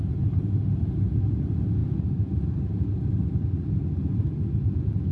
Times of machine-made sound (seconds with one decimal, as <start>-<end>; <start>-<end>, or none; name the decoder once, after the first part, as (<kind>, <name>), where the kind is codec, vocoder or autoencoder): none